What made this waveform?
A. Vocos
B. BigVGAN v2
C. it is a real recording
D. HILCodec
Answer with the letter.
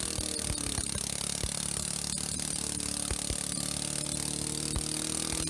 C